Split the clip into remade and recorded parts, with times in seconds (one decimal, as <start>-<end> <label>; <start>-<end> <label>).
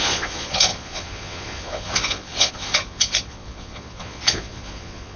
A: 0.0-5.2 remade